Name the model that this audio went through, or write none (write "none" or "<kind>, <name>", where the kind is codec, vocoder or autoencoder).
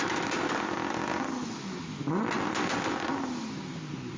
none